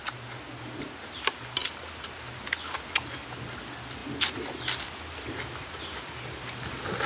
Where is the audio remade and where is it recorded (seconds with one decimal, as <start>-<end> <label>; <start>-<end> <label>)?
0.0-7.1 recorded